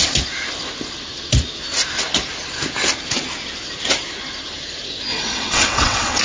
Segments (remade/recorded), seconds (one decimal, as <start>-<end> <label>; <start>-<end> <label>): 0.0-5.1 recorded; 5.1-6.2 remade